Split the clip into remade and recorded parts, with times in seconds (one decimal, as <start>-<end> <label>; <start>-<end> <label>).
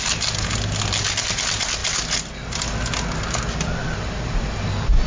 0.0-5.1 recorded